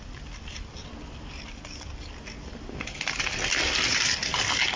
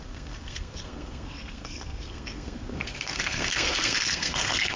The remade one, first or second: second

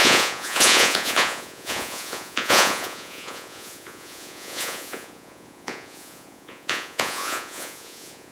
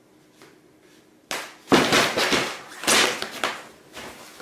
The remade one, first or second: first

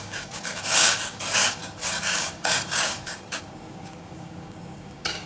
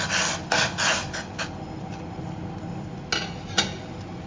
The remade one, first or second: first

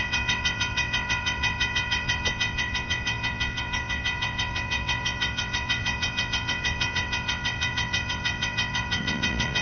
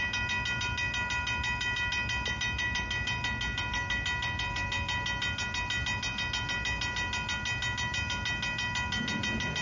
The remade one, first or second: first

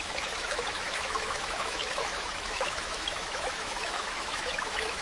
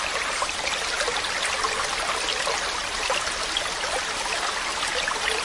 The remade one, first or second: first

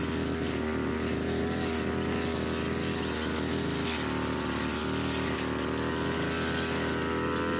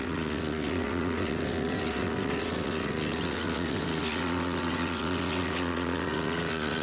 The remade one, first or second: second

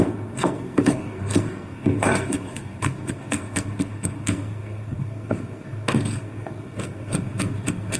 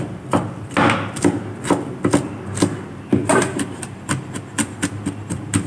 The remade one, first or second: first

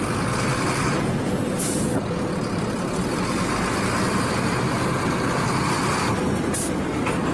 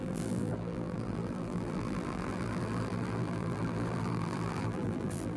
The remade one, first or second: second